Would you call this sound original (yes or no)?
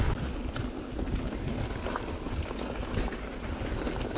yes